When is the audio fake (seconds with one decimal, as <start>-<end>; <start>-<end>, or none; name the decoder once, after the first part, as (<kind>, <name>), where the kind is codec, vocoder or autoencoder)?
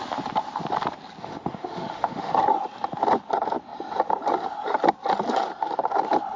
1.2-2.3 (autoencoder, DAC-VAE)